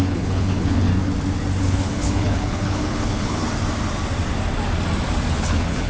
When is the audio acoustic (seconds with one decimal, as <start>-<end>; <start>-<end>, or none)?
0.9-1.6; 3.4-5.3